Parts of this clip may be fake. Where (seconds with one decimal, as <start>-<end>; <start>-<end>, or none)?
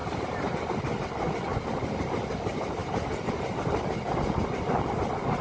0.0-0.6; 2.8-3.8